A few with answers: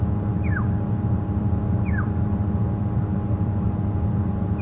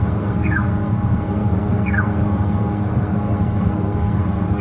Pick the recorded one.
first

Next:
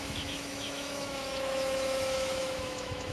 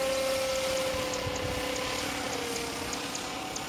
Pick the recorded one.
second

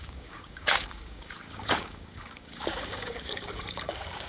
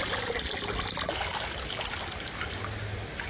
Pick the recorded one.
second